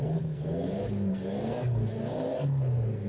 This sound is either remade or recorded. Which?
remade